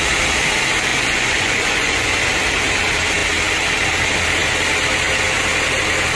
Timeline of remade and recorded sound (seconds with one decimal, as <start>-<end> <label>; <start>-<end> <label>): 0.0-0.9 recorded; 0.9-2.1 remade; 2.1-6.2 recorded